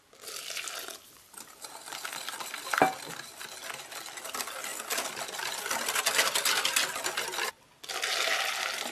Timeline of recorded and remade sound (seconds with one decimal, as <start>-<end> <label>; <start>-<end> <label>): 0.0-8.9 recorded